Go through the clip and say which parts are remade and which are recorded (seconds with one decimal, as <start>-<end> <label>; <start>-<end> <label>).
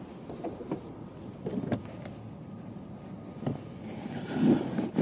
0.0-5.0 recorded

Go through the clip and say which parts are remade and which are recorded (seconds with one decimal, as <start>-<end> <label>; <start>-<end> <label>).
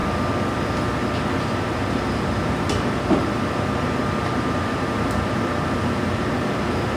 0.0-1.4 recorded; 1.4-7.0 remade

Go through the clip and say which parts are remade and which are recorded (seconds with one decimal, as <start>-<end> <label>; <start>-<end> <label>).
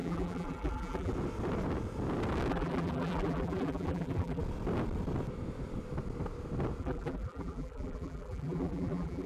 0.0-1.1 remade; 1.1-2.5 recorded; 2.5-4.4 remade; 4.4-6.8 recorded; 6.8-9.3 remade